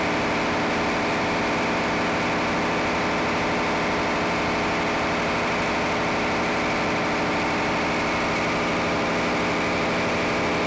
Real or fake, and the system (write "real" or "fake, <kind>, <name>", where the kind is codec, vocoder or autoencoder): real